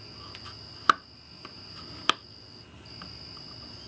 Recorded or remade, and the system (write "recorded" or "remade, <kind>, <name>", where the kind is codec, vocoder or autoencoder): recorded